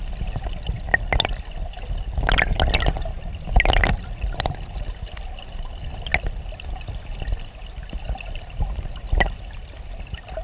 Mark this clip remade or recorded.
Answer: recorded